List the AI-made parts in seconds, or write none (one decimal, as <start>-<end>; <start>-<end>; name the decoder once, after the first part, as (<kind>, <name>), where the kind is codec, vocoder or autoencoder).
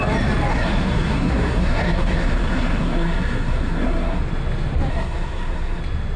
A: 0.5-4.2 (codec, SNAC); 4.9-5.8